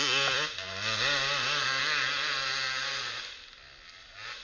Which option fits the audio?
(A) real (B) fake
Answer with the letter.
A